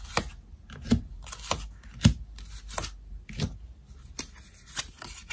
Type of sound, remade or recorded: recorded